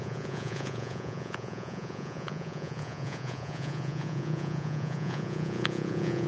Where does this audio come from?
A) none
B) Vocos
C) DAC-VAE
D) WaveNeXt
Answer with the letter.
B